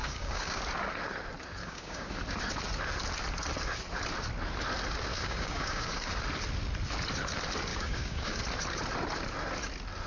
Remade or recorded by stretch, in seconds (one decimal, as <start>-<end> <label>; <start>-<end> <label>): 0.0-0.6 remade; 0.6-1.6 recorded; 1.6-2.2 remade; 2.2-5.1 recorded; 5.1-6.1 remade; 6.1-7.7 recorded; 7.7-8.4 remade; 8.4-10.1 recorded